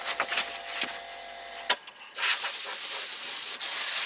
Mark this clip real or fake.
real